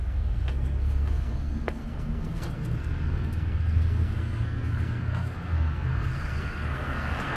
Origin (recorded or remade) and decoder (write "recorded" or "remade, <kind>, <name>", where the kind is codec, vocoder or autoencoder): remade, codec, SNAC